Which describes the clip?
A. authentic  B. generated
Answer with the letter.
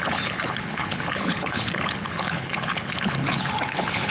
B